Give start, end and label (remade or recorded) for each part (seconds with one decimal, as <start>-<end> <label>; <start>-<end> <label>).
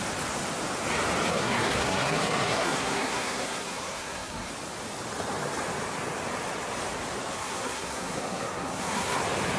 0.0-1.3 recorded; 1.3-4.5 remade; 4.5-7.3 recorded; 7.3-9.2 remade; 9.2-9.6 recorded